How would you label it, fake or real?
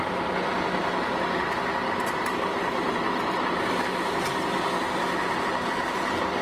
real